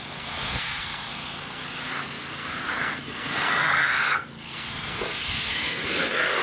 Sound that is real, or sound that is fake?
fake